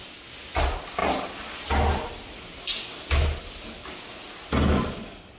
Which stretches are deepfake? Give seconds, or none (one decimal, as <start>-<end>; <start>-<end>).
none